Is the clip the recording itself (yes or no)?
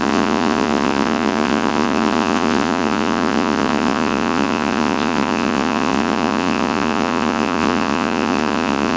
no